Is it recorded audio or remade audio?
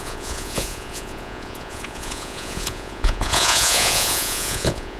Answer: remade